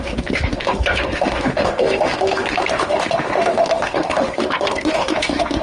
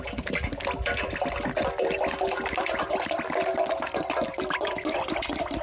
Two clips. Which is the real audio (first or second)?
second